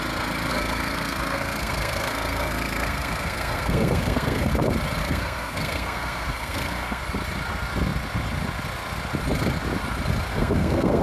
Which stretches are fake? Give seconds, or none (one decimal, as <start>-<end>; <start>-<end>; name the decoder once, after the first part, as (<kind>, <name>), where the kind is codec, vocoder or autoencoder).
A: 0.5-4.5 (codec, SNAC); 5.0-7.0; 10.3-11.0